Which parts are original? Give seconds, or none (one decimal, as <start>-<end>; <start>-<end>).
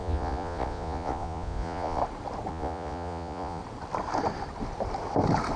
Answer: 2.0-2.5; 3.6-5.6